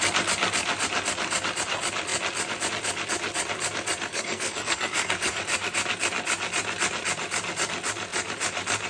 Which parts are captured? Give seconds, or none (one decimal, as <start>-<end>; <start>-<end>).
0.0-4.1; 5.4-8.9